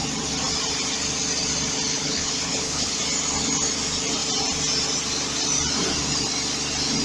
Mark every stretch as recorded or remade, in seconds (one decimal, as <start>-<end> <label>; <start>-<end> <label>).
0.0-1.9 recorded; 1.9-3.0 remade; 3.0-7.0 recorded